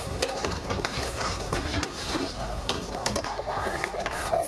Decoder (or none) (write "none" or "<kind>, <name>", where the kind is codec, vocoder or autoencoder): codec, SNAC